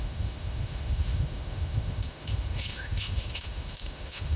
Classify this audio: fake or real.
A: fake